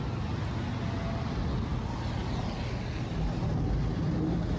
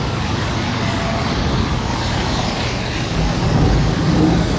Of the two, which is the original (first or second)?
first